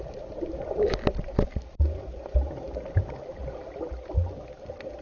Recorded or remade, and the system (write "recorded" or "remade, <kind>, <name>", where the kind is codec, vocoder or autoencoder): recorded